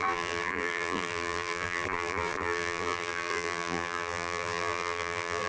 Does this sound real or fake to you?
fake